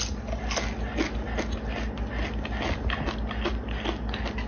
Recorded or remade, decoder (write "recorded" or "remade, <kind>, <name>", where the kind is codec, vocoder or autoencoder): recorded